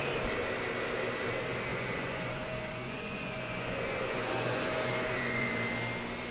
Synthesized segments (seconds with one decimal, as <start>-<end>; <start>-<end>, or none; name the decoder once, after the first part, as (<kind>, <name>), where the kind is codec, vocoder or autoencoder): 1.7-5.5 (vocoder, Vocos)